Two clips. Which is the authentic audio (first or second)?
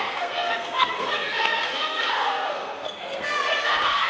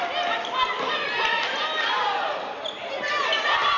second